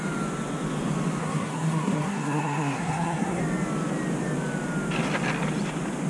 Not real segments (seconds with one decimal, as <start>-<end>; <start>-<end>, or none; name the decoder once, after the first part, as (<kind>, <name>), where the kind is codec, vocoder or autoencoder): 1.2-3.4 (codec, SNAC)

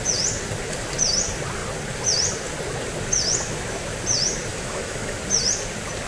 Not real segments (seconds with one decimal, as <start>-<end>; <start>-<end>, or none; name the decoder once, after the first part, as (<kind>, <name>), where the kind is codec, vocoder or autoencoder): 4.5-5.2 (autoencoder, DAC-VAE)

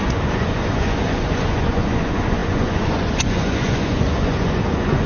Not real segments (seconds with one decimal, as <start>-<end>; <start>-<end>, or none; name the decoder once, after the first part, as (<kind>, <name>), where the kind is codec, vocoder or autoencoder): 0.0-5.1 (vocoder, Vocos)

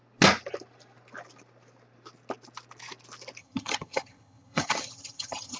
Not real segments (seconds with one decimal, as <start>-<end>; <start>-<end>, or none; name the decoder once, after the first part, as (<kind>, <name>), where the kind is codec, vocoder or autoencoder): 3.4-5.6 (vocoder, HiFi-GAN)

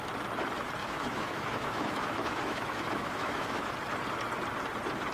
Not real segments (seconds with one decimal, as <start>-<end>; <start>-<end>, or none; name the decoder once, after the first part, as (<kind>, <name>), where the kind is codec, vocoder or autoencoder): 0.8-3.7 (autoencoder, DAC-VAE)

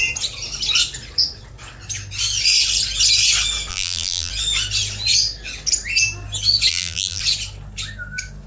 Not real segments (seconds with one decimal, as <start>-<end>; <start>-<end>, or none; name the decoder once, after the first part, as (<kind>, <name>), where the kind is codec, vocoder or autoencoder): 3.7-4.3 (vocoder, BigVGAN v2); 6.7-7.2

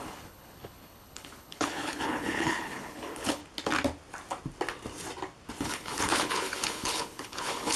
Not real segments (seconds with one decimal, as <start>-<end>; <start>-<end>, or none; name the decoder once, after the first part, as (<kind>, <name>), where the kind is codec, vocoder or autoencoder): 0.0-3.4 (codec, HILCodec); 5.6-7.8

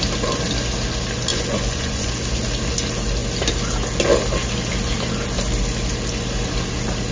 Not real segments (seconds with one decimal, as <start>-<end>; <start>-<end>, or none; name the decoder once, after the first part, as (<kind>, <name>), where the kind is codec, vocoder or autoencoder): 1.3-2.1 (vocoder, Vocos)